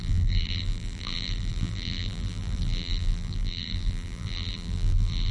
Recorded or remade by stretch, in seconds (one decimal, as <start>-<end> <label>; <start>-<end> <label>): 0.0-5.3 remade